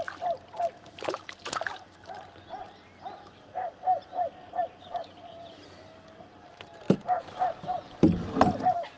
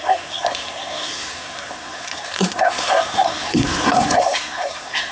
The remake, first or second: second